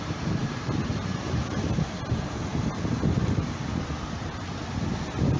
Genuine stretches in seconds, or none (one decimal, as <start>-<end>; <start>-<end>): 0.0-5.4